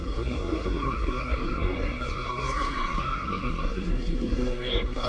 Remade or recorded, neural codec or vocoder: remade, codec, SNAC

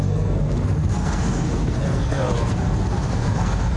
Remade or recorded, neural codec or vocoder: remade, codec, SNAC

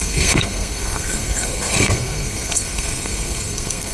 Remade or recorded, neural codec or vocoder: remade, codec, SNAC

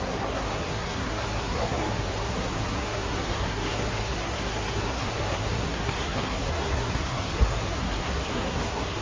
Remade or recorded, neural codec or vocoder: remade, codec, SNAC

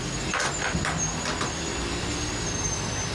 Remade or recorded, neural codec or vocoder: recorded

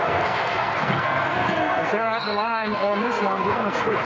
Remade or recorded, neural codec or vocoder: remade, codec, SNAC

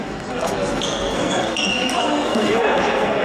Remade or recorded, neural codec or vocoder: remade, codec, SNAC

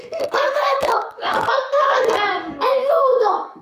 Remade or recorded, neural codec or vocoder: remade, codec, SNAC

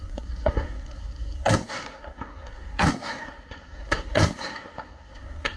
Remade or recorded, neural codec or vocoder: remade, codec, SNAC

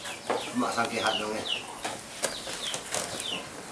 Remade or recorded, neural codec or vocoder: recorded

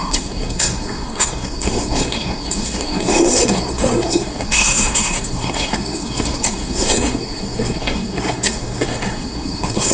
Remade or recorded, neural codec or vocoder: remade, codec, SNAC